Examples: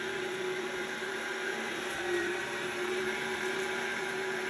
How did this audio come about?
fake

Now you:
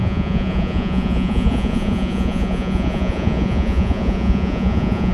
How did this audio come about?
fake